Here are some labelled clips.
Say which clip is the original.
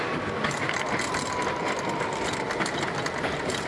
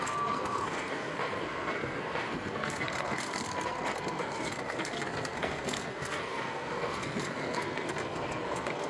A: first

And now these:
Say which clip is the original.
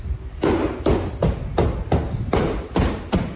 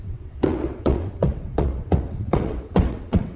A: first